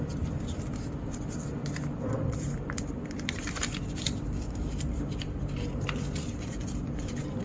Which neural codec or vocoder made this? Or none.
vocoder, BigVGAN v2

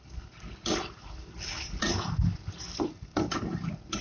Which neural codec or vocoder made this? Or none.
none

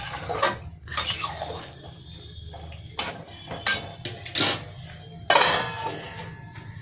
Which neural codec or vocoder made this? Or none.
none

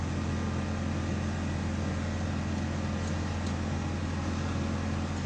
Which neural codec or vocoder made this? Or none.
none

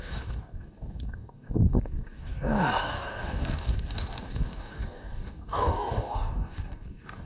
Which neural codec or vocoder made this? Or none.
codec, DAC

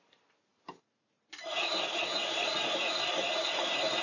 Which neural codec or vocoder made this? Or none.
vocoder, BigVGAN v2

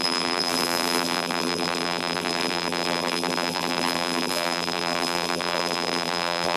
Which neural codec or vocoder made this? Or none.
vocoder, BigVGAN v2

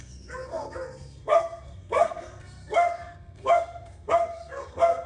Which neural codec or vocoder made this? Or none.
codec, SNAC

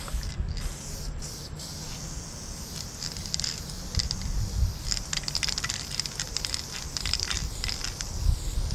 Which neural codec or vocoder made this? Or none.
none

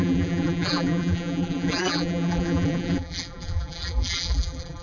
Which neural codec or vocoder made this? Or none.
vocoder, BigVGAN v2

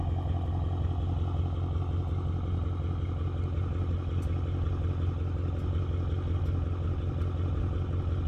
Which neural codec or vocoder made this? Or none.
none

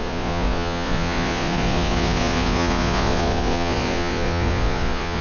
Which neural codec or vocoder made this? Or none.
vocoder, Vocos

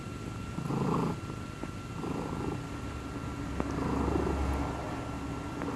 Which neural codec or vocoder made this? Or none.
none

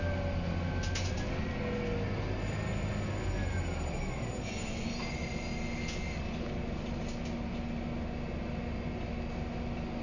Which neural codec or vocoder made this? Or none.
none